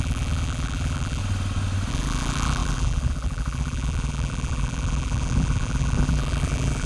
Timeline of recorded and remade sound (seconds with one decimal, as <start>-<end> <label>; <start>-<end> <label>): 0.0-1.2 remade; 1.2-1.9 recorded; 1.9-6.9 remade